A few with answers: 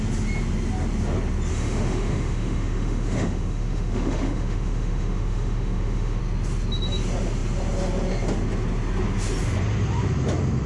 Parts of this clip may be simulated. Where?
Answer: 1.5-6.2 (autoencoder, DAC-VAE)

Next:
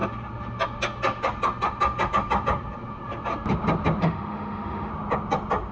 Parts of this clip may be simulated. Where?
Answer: 4.0-4.9 (autoencoder, DAC-VAE)

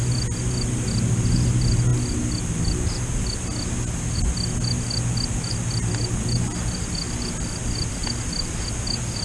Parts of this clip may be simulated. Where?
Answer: none

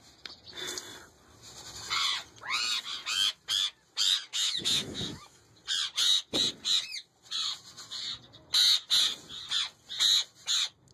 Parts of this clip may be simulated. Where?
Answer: 4.3-5.4 (autoencoder, DAC-VAE)

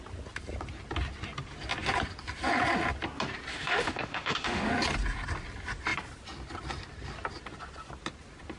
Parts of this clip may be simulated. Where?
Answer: 3.5-4.7 (autoencoder, DAC-VAE)

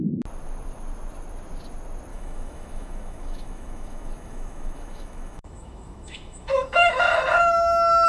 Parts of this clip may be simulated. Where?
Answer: 2.1-7.0 (autoencoder, DAC-VAE)